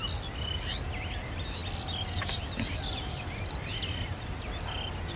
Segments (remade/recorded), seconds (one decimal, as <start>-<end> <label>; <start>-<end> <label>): 0.0-5.2 recorded

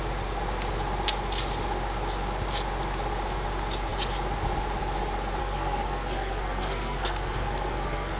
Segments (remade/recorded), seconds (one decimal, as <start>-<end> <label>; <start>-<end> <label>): 0.0-5.4 recorded; 5.4-8.2 remade

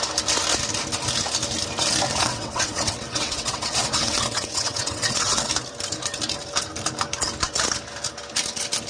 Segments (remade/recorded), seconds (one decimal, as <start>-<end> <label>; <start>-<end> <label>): 0.0-2.1 recorded; 2.1-5.5 remade; 5.5-8.9 recorded

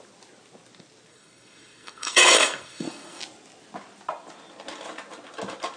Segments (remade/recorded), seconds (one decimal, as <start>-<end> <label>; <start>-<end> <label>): 0.0-1.1 recorded; 1.1-3.2 remade; 3.2-5.8 recorded

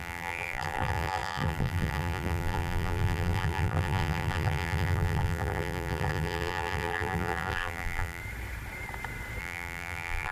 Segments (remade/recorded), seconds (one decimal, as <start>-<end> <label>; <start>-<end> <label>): 0.0-8.2 remade; 8.2-9.4 recorded; 9.4-10.3 remade

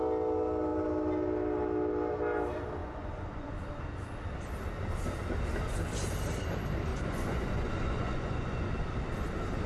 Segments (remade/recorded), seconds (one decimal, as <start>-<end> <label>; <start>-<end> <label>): 0.0-2.8 recorded; 2.8-3.5 remade; 3.5-6.9 recorded; 6.9-8.7 remade; 8.7-9.7 recorded

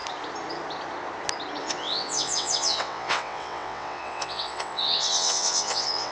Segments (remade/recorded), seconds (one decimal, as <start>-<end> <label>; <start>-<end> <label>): 0.0-1.6 recorded; 1.6-6.1 remade